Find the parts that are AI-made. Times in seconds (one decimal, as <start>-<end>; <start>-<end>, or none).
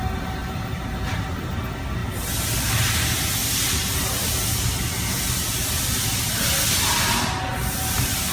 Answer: 0.4-1.1